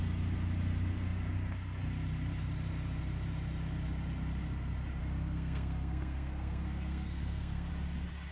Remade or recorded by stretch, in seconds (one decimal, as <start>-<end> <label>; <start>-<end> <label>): 0.0-5.0 recorded; 5.0-7.7 remade; 7.7-8.3 recorded